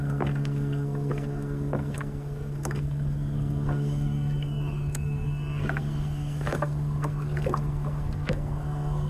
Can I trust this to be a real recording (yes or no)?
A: no